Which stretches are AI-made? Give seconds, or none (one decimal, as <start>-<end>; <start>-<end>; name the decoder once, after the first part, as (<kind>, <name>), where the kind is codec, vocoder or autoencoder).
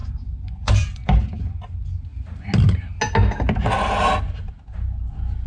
0.0-1.5 (vocoder, BigVGAN v2)